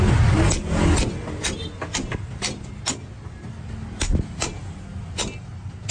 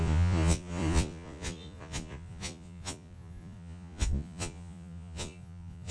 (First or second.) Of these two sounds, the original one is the first